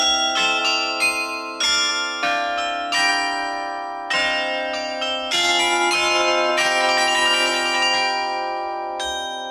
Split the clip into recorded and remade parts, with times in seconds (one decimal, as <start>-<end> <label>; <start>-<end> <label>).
0.0-9.5 recorded